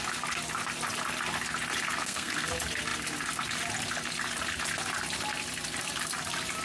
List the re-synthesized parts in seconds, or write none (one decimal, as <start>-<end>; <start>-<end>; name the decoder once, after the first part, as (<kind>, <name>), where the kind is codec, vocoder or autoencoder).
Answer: 2.0-2.5 (codec, SNAC)